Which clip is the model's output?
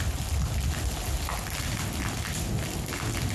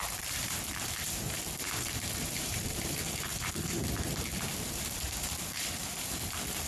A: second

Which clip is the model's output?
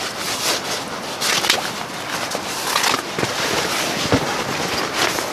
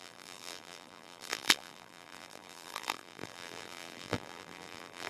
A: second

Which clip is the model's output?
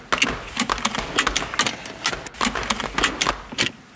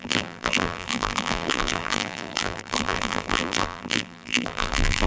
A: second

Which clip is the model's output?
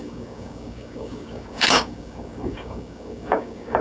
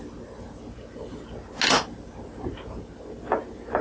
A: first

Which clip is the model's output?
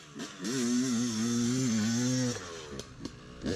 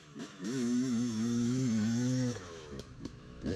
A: second